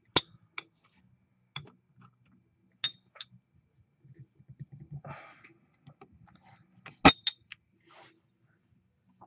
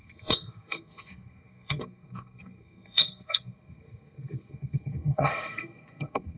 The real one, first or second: first